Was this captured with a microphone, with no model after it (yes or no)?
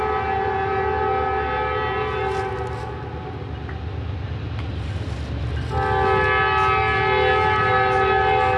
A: yes